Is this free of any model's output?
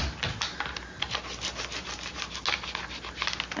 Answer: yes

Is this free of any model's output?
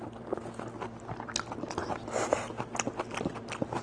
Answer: yes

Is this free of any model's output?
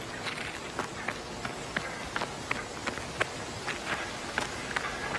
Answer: yes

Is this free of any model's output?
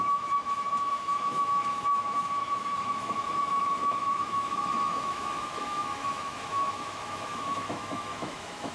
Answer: no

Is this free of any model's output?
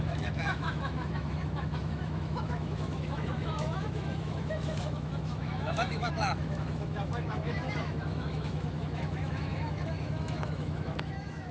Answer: no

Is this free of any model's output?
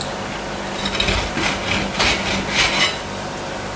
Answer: yes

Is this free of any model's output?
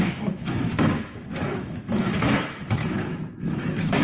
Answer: no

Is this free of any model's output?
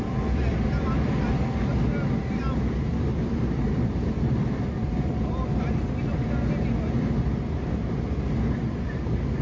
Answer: yes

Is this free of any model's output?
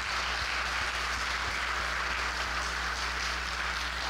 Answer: yes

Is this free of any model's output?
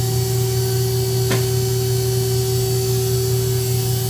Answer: yes